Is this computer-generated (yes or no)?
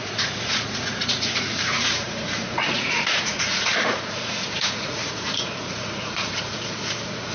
yes